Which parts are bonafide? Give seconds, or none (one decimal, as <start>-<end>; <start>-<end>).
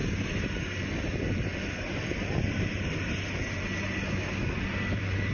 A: 0.0-0.9; 1.5-4.7